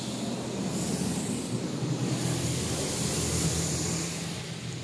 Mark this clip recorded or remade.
recorded